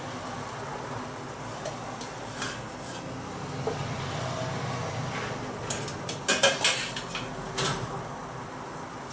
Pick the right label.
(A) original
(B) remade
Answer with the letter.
A